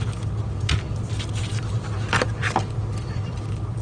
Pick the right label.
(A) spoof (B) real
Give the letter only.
B